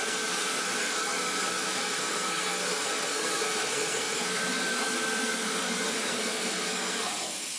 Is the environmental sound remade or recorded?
remade